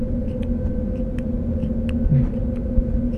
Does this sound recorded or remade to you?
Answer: recorded